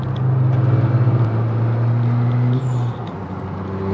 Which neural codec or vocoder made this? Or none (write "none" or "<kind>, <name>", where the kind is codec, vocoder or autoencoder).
none